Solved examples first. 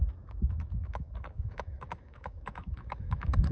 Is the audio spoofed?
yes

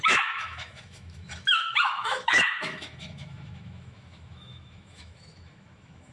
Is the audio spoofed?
yes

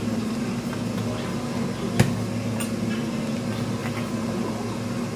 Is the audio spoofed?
no